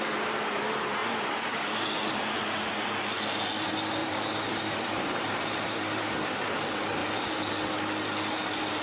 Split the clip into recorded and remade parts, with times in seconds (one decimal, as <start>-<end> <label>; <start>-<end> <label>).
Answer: 0.0-4.0 recorded; 4.0-6.5 remade; 6.5-7.0 recorded; 7.0-7.5 remade; 7.5-8.8 recorded